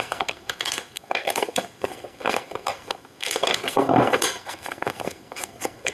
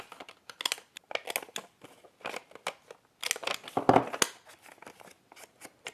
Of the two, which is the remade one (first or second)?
first